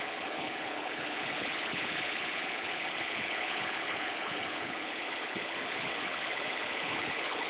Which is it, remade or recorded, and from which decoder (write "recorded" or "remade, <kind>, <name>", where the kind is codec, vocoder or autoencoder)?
remade, codec, HILCodec